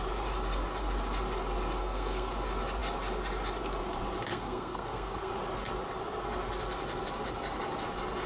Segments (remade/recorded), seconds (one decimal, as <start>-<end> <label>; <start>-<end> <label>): 0.0-1.8 recorded; 1.8-2.3 remade; 2.3-4.3 recorded; 4.3-5.3 remade; 5.3-8.3 recorded